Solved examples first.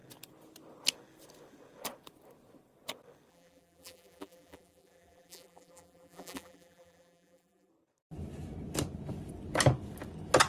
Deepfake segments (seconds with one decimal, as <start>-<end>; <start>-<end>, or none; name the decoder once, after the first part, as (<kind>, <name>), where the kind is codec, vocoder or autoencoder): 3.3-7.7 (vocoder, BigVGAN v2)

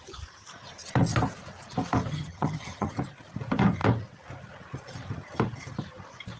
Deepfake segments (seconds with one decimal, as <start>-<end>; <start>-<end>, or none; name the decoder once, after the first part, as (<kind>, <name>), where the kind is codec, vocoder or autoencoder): 2.1-2.9 (vocoder, HiFi-GAN)

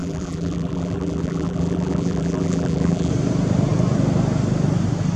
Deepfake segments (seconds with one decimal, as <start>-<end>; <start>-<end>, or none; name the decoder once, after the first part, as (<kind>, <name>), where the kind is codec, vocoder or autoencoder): 0.0-3.1 (vocoder, BigVGAN v2)

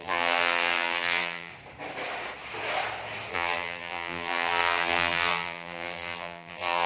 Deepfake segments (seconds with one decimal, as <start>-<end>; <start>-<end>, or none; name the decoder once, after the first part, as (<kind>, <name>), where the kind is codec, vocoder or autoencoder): 0.0-1.5 (vocoder, BigVGAN v2); 3.3-6.9

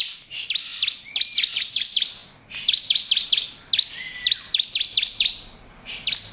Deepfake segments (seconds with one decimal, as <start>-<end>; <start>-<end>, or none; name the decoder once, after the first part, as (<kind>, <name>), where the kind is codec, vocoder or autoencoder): none

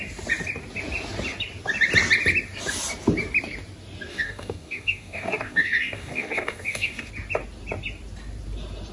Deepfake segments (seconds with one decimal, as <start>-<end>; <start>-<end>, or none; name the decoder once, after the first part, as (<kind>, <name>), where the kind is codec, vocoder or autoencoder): 4.1-7.1 (codec, DAC)